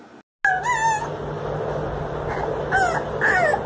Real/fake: real